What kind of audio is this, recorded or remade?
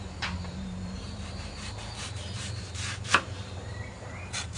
remade